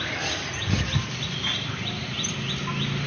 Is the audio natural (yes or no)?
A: yes